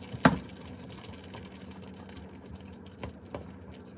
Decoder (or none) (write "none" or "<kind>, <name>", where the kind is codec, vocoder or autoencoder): none